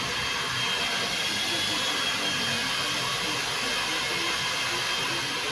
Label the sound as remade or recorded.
recorded